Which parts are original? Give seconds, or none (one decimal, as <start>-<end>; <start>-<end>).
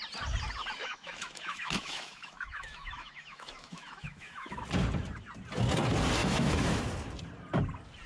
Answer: 0.0-0.8; 4.6-6.2; 6.8-8.1